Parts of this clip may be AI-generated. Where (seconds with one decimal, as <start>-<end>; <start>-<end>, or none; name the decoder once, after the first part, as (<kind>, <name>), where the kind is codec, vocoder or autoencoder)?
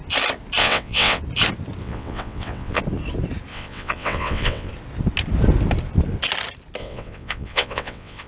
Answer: 0.6-1.2 (vocoder, WaveNeXt); 1.8-2.8; 3.5-4.7; 6.8-8.3